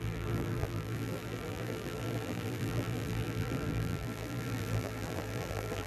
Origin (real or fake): fake